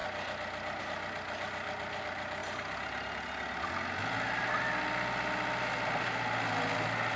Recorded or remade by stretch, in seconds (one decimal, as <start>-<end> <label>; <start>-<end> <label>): 0.0-7.2 recorded